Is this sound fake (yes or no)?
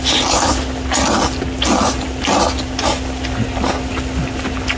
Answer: no